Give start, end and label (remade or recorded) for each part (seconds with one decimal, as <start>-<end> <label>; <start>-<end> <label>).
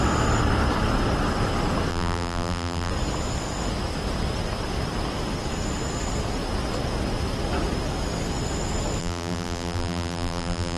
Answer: 0.0-1.9 recorded; 1.9-2.9 remade; 2.9-9.0 recorded; 9.0-10.8 remade